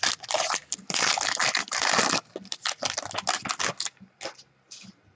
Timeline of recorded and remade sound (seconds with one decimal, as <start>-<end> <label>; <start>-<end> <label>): 0.0-5.2 recorded